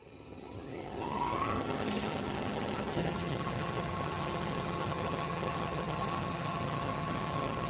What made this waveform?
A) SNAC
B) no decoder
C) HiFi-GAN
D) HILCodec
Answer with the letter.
C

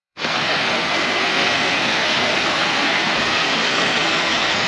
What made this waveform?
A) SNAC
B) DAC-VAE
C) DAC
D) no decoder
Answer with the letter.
A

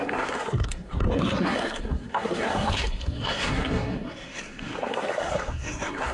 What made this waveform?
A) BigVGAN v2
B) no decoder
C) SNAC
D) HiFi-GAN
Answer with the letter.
C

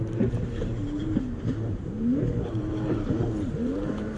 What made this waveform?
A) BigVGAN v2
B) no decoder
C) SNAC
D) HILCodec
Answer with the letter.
A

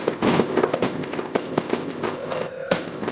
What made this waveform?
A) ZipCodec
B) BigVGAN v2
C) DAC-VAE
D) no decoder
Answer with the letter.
A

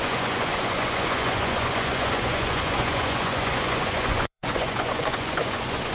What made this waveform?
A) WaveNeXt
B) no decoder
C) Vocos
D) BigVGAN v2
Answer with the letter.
C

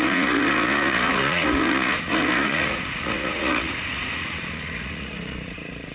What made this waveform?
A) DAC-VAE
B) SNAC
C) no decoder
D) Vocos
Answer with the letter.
D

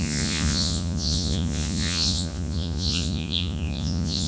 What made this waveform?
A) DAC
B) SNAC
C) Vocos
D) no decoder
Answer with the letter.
C